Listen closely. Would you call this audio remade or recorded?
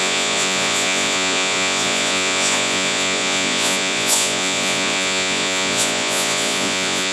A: remade